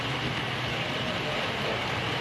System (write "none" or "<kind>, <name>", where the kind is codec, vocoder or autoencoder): vocoder, BigVGAN v2